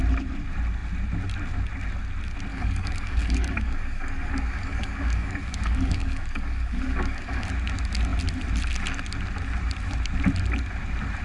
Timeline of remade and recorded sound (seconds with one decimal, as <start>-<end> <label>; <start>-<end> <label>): 0.0-2.5 recorded; 2.5-7.5 remade; 7.5-11.2 recorded

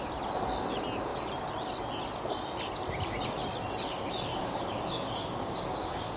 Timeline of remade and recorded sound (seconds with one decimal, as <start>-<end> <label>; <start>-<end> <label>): 0.0-4.3 recorded; 4.3-6.2 remade

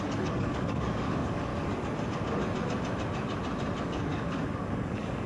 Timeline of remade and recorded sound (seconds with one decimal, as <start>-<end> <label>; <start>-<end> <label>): 0.0-1.5 remade; 1.5-3.8 recorded; 3.8-5.3 remade

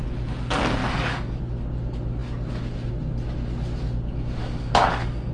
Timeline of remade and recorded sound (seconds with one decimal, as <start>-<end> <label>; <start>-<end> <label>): 0.0-0.8 recorded; 0.8-1.4 remade; 1.4-4.4 recorded; 4.4-5.3 remade

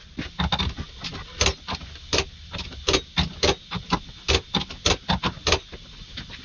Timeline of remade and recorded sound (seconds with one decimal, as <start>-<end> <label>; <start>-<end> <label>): 0.0-6.4 recorded